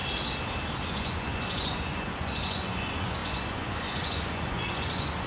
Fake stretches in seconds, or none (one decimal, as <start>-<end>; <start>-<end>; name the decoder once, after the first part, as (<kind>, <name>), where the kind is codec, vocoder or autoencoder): 0.9-5.3 (vocoder, Vocos)

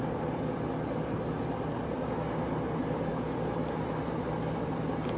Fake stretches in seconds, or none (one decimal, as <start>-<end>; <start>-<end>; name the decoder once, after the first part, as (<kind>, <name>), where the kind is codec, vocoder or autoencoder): none

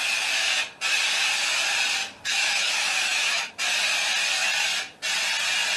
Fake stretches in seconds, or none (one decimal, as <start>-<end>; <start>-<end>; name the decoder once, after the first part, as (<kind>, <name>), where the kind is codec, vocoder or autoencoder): 2.0-3.5 (autoencoder, DAC-VAE)

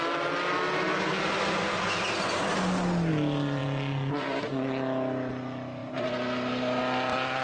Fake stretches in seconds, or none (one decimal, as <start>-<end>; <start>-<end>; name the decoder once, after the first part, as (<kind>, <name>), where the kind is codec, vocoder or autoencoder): none

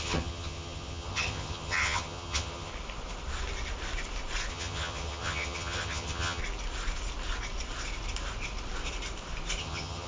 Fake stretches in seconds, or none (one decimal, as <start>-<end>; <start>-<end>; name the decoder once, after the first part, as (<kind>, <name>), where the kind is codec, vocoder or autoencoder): 0.0-2.7 (vocoder, HiFi-GAN); 4.5-6.4; 9.6-10.1

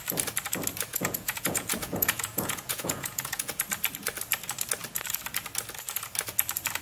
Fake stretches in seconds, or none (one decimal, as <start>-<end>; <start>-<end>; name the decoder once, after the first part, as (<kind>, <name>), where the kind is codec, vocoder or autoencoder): 0.9-3.6 (vocoder, Vocos)

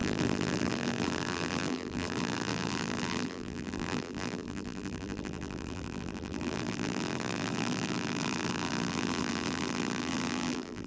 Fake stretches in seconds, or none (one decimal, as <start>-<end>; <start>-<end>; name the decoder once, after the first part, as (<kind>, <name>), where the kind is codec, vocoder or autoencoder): 0.0-10.9 (vocoder, BigVGAN v2)

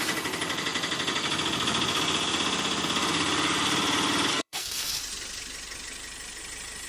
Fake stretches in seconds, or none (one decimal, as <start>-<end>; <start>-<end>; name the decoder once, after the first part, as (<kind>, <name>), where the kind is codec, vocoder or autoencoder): 4.3-5.0 (codec, SNAC)